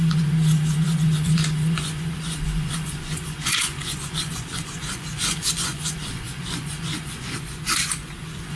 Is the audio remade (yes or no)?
yes